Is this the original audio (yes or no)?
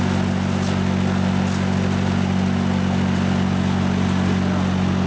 yes